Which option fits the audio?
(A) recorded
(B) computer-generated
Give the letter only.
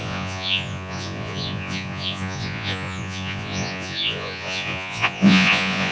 B